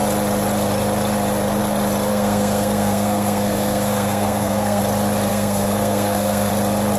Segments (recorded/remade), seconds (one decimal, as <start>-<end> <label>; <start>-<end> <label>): 0.0-2.1 recorded; 2.1-4.8 remade; 4.8-5.3 recorded; 5.3-6.5 remade; 6.5-7.0 recorded